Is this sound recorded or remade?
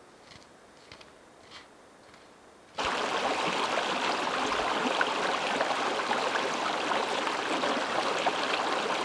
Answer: recorded